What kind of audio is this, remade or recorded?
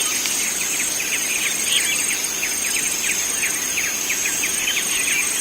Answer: recorded